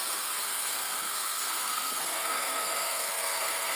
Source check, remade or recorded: remade